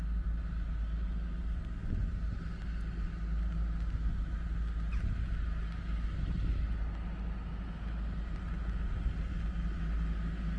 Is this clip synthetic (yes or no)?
no